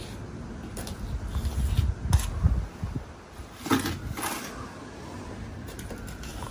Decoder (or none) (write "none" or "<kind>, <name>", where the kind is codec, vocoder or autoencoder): none